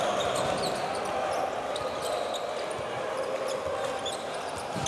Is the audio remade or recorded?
recorded